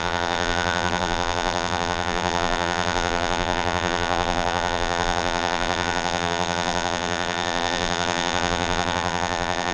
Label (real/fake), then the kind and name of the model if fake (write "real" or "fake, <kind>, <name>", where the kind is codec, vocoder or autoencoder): fake, vocoder, BigVGAN v2